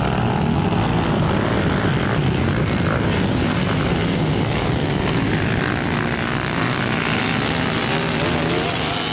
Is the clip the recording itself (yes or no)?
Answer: yes